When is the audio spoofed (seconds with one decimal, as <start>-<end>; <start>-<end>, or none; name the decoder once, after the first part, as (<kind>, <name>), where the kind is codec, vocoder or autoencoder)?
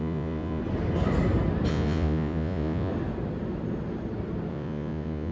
0.0-0.6 (vocoder, Vocos); 1.7-2.9; 4.5-5.3